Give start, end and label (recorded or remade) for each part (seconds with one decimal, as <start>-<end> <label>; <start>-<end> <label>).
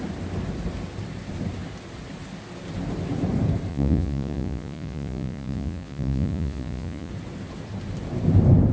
0.0-3.7 recorded; 3.7-7.1 remade; 7.1-8.7 recorded